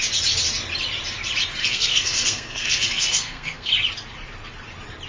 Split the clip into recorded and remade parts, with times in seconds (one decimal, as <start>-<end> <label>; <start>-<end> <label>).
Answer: 0.0-1.6 recorded; 1.6-3.7 remade; 3.7-5.1 recorded